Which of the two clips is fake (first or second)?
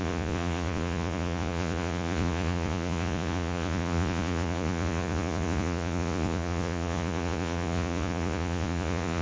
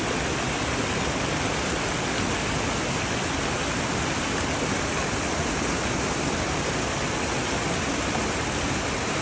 first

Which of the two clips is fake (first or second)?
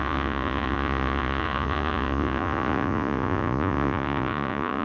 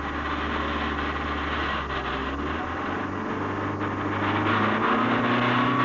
first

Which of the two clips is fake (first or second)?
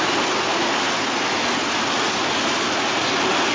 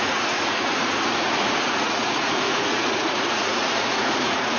second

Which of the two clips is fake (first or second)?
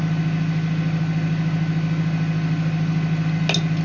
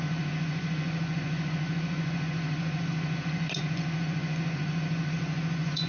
second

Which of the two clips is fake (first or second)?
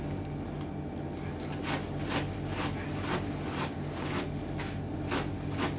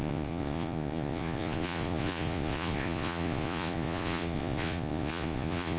second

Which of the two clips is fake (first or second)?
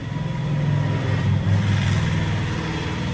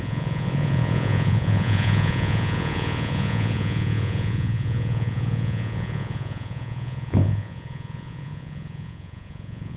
second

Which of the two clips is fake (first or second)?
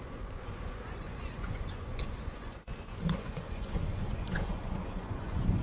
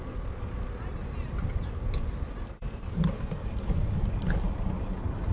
first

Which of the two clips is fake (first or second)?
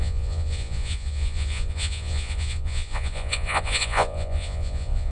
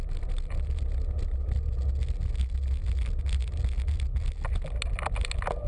first